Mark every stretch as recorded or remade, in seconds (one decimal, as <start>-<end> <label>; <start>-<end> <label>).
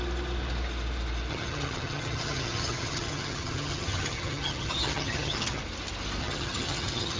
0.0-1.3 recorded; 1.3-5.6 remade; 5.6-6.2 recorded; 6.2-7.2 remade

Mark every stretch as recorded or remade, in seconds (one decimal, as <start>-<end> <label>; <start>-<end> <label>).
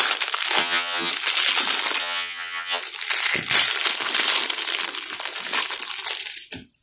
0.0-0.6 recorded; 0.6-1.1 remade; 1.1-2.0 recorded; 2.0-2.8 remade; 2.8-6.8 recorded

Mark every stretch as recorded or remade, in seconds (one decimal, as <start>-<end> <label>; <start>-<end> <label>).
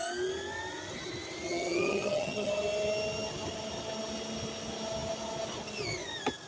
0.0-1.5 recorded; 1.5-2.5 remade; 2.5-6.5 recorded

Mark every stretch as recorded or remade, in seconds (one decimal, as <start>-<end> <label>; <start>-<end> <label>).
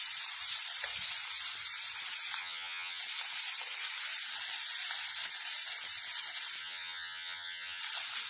0.0-2.4 recorded; 2.4-3.0 remade; 3.0-6.6 recorded; 6.6-7.8 remade; 7.8-8.3 recorded